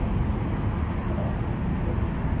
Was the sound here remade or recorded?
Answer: recorded